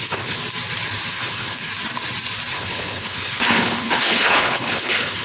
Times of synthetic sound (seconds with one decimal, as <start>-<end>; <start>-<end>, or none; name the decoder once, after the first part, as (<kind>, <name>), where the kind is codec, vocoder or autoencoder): 0.0-0.4 (codec, HILCodec); 1.1-1.7; 2.5-5.2